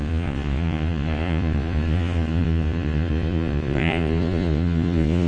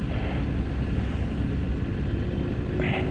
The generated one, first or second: first